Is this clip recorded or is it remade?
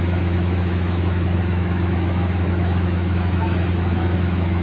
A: remade